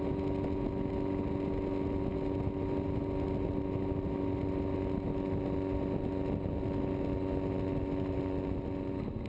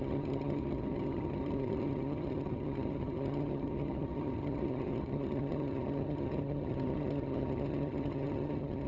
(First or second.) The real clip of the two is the first